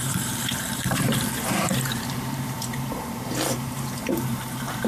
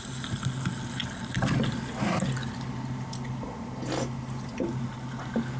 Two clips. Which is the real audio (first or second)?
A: second